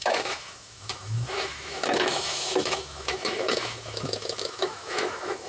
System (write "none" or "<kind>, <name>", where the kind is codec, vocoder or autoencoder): autoencoder, DAC-VAE